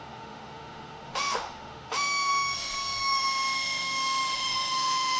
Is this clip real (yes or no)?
no